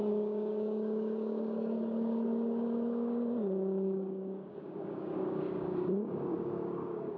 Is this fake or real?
fake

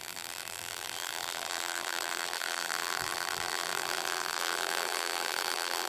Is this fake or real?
fake